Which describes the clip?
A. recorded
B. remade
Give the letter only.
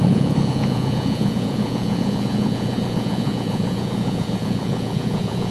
B